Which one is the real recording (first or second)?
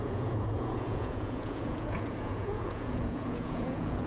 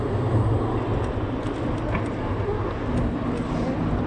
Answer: second